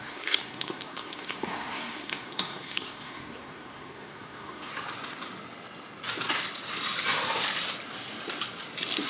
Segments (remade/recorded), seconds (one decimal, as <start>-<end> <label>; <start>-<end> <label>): 0.0-4.7 remade; 4.7-9.1 recorded